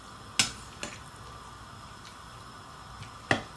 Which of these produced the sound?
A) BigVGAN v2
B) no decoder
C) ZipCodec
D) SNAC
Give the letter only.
B